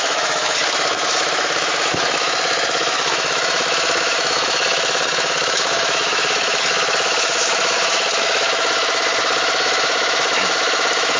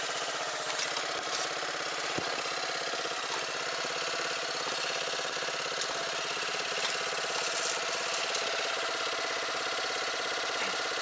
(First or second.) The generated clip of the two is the first